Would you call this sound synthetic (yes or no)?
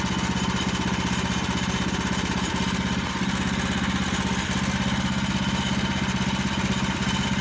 no